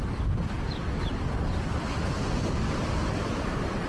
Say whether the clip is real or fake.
real